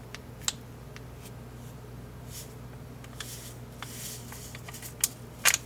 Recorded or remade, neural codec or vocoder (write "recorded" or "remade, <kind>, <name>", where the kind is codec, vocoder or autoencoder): recorded